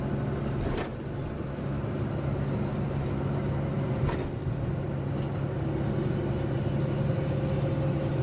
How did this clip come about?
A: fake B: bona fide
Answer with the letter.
B